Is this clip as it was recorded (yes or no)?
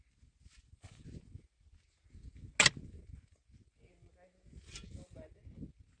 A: yes